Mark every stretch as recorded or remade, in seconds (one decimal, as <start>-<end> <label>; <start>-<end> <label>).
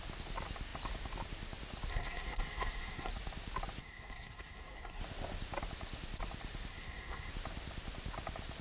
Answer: 0.0-1.9 recorded; 1.9-3.1 remade; 3.1-3.8 recorded; 3.8-5.0 remade; 5.0-6.7 recorded; 6.7-7.3 remade; 7.3-8.6 recorded